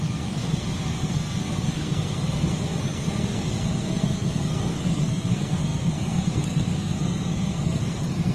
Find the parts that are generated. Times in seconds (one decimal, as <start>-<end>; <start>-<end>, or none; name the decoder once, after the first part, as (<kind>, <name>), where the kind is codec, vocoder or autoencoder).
0.0-8.3 (codec, SNAC)